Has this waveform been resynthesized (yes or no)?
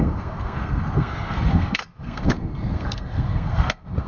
yes